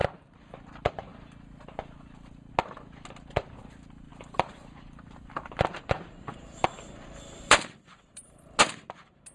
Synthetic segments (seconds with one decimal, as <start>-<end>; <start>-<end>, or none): 4.1-8.6